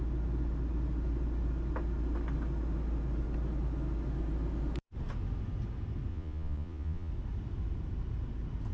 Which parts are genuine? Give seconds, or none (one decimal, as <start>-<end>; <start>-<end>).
0.0-6.1; 7.1-8.7